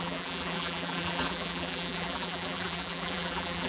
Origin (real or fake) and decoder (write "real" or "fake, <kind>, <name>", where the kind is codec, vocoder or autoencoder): fake, vocoder, BigVGAN v2